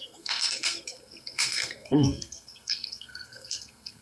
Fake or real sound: fake